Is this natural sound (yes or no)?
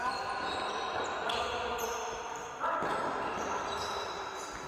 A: yes